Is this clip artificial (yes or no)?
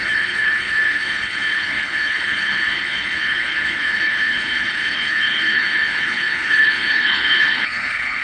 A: yes